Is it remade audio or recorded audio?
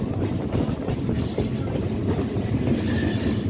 recorded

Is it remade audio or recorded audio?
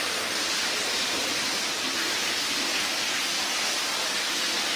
recorded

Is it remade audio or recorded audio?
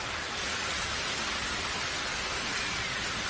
recorded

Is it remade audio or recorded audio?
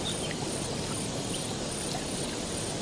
recorded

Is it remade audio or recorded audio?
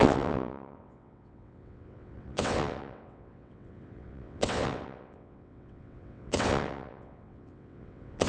remade